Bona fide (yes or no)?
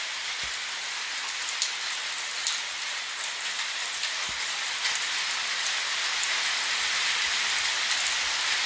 yes